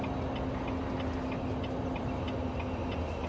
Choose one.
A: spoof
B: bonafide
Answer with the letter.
B